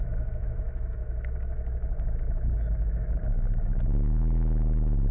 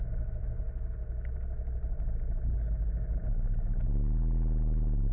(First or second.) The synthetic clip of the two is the first